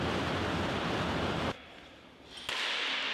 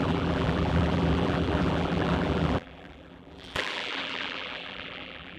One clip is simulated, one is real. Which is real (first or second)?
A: first